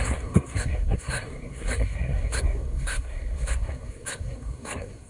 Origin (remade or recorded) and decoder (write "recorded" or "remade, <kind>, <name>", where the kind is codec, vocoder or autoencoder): remade, codec, SNAC